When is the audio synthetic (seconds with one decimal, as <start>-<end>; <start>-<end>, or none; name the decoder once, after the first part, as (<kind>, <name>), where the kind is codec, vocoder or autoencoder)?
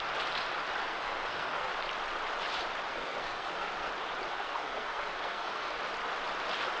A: 0.8-1.7 (codec, SNAC); 2.9-3.9; 4.3-5.8